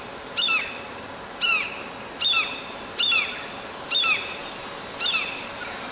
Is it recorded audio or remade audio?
recorded